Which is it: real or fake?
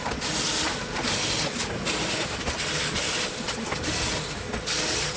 real